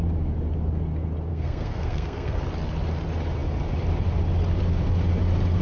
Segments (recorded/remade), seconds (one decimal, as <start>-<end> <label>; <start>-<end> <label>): 0.0-1.3 recorded; 1.3-2.4 remade; 2.4-5.6 recorded

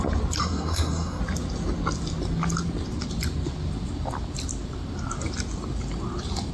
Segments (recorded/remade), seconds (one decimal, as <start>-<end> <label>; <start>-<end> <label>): 0.0-0.4 recorded; 0.4-1.2 remade; 1.2-6.5 recorded